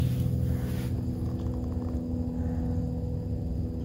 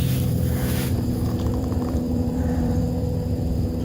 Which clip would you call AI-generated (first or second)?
second